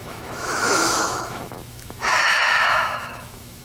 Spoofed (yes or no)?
yes